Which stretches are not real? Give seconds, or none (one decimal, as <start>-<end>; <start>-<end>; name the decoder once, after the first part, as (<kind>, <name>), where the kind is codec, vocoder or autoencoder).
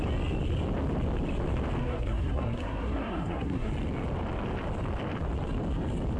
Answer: 1.8-3.7 (codec, SNAC)